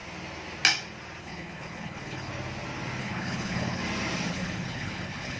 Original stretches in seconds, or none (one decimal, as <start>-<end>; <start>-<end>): 0.0-1.2; 2.3-3.0; 3.8-4.3